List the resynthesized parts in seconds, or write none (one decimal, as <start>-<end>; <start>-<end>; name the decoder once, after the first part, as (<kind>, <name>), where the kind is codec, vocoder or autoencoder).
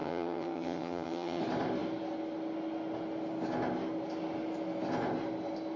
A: 0.0-1.4 (vocoder, HiFi-GAN)